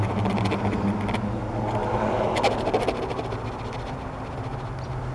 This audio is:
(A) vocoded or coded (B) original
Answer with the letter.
B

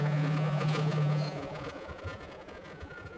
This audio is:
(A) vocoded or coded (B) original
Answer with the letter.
A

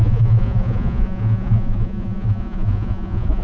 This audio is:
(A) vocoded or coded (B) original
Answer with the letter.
A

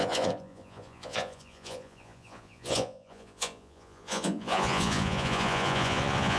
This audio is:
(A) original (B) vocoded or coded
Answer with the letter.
B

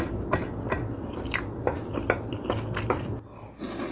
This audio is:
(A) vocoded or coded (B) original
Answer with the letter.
B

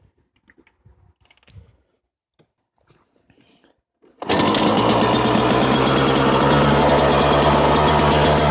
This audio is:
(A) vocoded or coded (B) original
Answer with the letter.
B